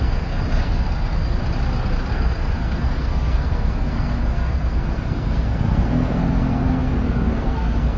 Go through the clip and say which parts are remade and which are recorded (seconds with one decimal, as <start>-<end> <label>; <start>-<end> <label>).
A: 0.0-1.4 remade; 1.4-2.1 recorded; 2.1-8.0 remade